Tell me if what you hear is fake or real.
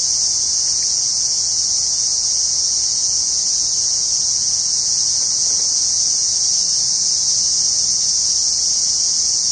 fake